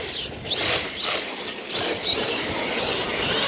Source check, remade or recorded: recorded